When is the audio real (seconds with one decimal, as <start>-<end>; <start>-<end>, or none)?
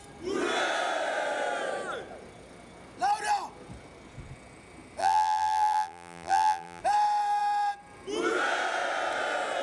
0.0-5.0; 6.8-9.6